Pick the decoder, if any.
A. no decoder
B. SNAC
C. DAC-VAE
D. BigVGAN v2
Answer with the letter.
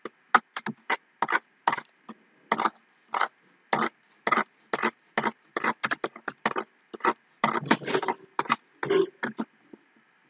A